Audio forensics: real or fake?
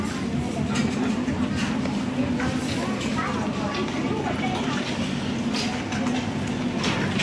real